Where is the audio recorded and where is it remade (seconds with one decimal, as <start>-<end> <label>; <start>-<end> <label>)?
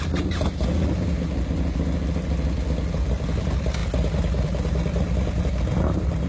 0.0-6.3 recorded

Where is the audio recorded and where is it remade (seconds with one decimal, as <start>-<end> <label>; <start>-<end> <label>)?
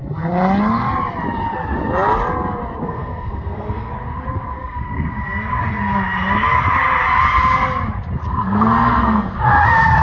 0.0-2.8 recorded; 2.8-3.9 remade; 3.9-4.6 recorded; 4.6-5.2 remade; 5.2-8.3 recorded; 8.3-9.5 remade; 9.5-10.0 recorded